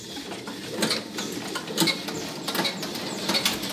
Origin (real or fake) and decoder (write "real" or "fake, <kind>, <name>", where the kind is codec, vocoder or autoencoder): real